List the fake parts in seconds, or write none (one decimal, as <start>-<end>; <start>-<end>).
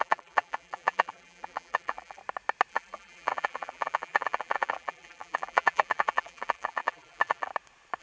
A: 0.0-2.2; 2.7-7.5